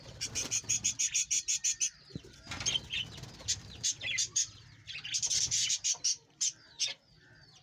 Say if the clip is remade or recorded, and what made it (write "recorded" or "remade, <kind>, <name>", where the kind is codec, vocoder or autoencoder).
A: remade, vocoder, BigVGAN v2